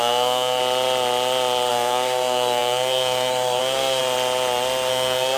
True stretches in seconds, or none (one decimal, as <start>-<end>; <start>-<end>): 0.6-1.7; 4.0-4.9